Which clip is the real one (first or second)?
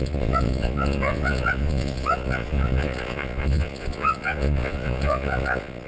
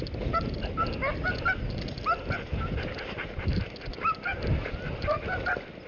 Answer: second